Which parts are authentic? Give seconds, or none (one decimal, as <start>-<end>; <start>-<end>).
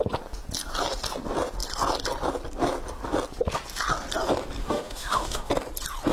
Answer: 0.0-4.6; 5.5-6.1